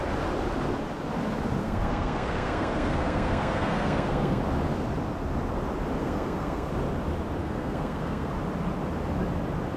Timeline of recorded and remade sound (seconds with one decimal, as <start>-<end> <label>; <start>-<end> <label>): 0.0-1.6 recorded; 1.6-4.4 remade; 4.4-6.0 recorded; 6.0-6.7 remade; 6.7-7.4 recorded; 7.4-8.3 remade; 8.3-9.8 recorded